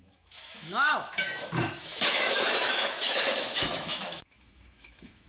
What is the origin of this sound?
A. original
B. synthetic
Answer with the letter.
B